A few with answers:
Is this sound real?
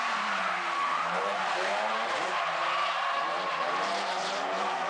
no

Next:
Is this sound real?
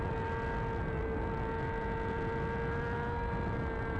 yes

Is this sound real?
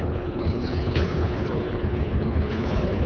no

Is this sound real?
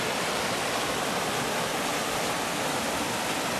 yes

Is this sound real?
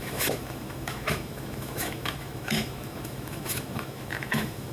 no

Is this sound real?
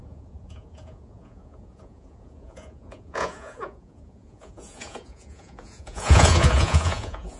no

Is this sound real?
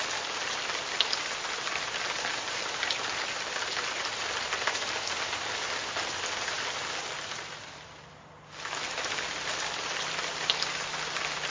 yes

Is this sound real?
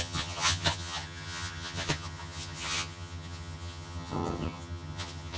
no